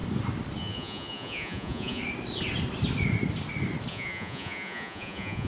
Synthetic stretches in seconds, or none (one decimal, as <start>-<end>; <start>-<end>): 0.6-2.0; 3.9-5.5